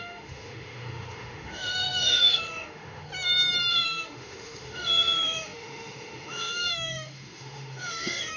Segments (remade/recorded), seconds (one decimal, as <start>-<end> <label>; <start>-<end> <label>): 0.0-3.1 remade; 3.1-3.7 recorded; 3.7-8.4 remade